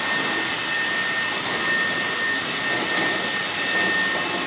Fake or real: real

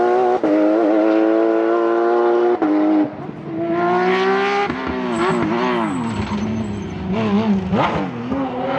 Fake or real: real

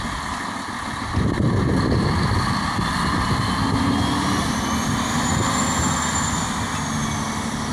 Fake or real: real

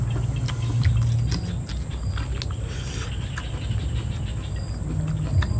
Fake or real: real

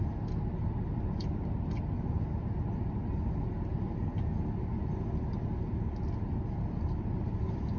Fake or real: real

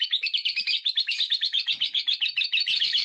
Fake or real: fake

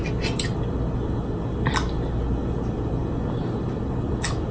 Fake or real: real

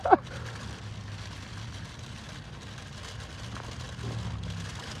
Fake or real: real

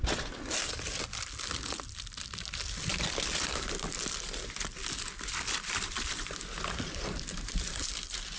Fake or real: real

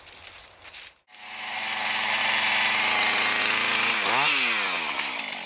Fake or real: real